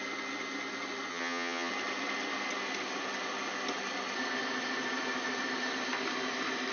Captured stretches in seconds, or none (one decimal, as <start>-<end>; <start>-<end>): 0.0-1.1; 1.7-6.7